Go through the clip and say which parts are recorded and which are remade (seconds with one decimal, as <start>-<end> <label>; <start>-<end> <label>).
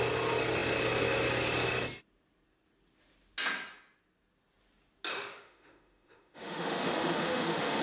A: 0.0-5.1 recorded; 5.1-7.8 remade